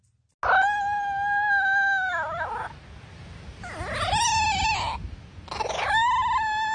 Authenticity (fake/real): real